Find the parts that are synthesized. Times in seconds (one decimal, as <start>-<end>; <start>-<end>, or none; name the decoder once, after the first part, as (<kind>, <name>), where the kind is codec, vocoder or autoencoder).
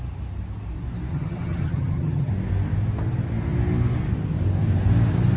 1.1-2.3 (vocoder, HiFi-GAN)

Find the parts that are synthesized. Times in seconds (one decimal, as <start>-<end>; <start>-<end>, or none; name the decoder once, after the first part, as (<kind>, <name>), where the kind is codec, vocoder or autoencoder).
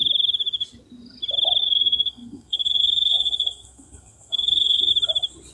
1.6-4.9 (codec, SNAC)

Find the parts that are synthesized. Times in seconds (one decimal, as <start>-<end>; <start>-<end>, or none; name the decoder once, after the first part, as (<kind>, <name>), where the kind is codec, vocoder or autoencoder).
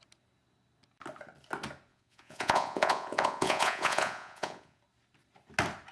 1.9-4.8 (vocoder, Vocos)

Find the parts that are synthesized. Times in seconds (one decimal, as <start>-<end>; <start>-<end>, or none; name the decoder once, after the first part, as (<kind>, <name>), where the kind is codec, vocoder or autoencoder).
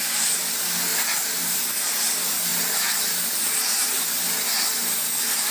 0.9-1.6 (vocoder, BigVGAN v2); 2.5-3.1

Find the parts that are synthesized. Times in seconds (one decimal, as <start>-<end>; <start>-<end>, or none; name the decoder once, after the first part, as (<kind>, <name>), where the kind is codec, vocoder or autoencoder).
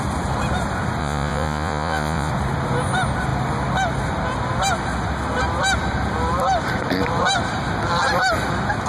1.0-2.3 (vocoder, Vocos)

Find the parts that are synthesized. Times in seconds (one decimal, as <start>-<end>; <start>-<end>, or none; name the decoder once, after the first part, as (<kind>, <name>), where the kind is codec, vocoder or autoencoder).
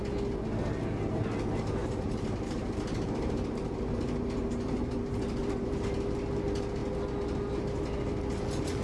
1.8-6.0 (vocoder, BigVGAN v2)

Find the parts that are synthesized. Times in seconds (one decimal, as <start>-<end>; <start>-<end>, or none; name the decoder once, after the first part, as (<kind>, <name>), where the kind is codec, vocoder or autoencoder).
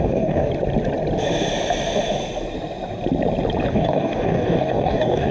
0.0-0.5 (codec, DAC); 3.7-5.3